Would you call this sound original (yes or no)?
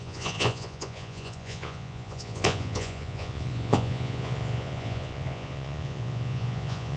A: no